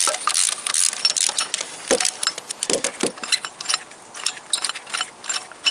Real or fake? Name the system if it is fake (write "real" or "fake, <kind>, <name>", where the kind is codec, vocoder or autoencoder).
real